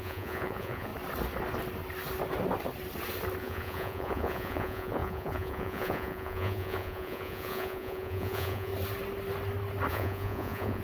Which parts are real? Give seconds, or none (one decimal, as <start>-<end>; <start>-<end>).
0.9-3.4; 8.7-9.9